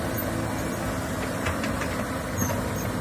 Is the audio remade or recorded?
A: recorded